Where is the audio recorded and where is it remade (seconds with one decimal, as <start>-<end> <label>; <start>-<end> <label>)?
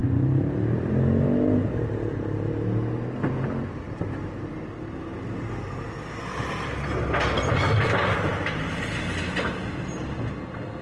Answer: 0.0-10.8 recorded